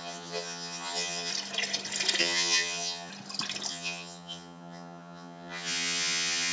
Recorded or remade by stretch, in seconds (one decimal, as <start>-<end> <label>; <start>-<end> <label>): 0.0-1.3 remade; 1.3-2.2 recorded; 2.2-3.1 remade; 3.1-3.7 recorded; 3.7-6.5 remade